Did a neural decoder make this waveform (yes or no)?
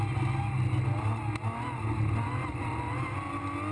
no